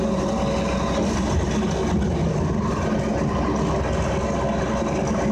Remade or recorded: recorded